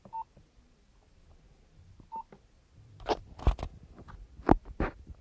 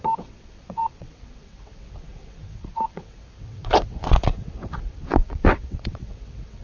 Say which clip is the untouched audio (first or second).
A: first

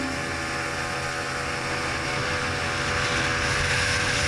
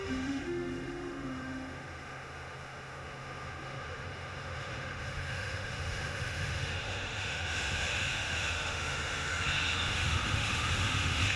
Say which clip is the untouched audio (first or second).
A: first